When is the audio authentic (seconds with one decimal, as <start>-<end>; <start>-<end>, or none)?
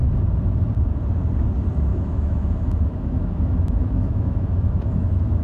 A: 0.0-1.9